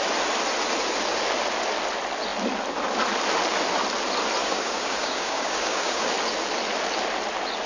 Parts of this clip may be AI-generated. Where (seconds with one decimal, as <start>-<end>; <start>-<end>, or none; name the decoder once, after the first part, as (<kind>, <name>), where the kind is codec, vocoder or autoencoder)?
4.4-6.1 (codec, DAC)